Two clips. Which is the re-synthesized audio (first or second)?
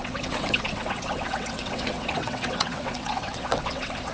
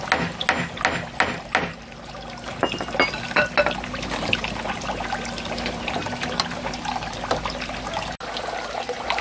first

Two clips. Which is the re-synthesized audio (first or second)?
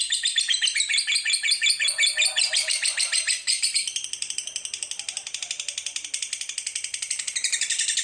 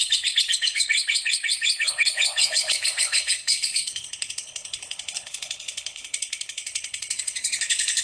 second